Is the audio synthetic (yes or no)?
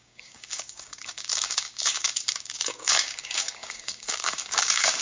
yes